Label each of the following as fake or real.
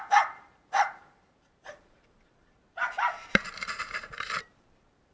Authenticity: fake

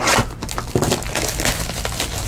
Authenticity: real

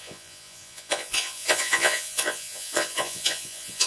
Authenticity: fake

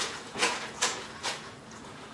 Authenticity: fake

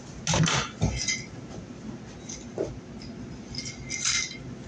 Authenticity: real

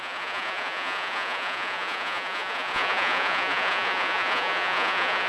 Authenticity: fake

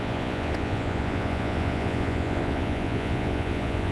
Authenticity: fake